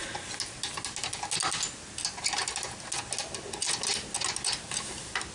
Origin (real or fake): real